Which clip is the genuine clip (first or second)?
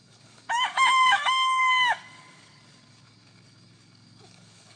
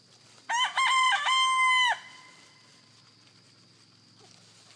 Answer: second